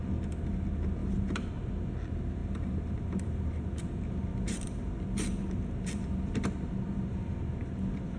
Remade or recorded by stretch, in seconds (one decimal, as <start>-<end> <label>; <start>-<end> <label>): 0.0-1.0 recorded; 1.0-1.5 remade; 1.5-2.4 recorded; 2.4-3.8 remade; 3.8-4.3 recorded; 4.3-6.7 remade; 6.7-8.2 recorded